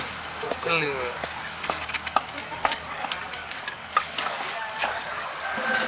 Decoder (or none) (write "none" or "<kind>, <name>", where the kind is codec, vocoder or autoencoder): codec, DAC